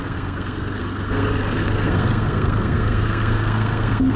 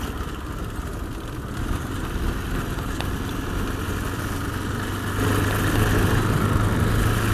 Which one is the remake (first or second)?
first